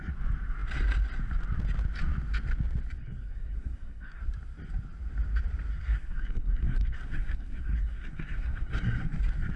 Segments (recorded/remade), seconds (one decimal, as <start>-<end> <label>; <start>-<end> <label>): 0.0-3.0 recorded; 3.0-4.2 remade; 4.2-5.7 recorded; 5.7-9.2 remade; 9.2-9.6 recorded